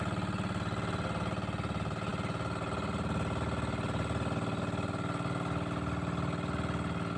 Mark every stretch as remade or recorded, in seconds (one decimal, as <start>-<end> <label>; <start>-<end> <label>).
0.0-7.2 recorded